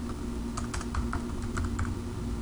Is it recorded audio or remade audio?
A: recorded